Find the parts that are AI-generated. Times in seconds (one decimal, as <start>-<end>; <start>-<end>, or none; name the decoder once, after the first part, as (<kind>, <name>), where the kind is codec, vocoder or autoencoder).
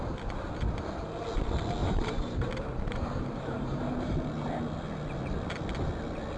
1.8-4.1 (vocoder, BigVGAN v2)